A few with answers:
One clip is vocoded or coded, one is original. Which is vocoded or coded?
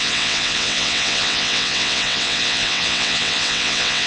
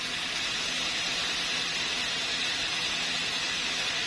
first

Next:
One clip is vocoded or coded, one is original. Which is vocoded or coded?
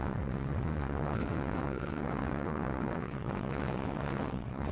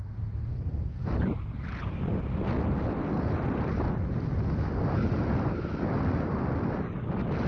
first